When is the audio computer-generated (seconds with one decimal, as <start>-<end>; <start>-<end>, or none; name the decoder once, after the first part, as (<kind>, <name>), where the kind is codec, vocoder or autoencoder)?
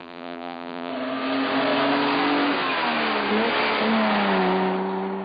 0.0-0.9 (vocoder, BigVGAN v2)